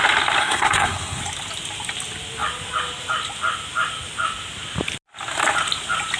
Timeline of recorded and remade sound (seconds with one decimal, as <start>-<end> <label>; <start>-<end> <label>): 0.0-0.4 recorded; 0.4-1.2 remade; 1.2-6.2 recorded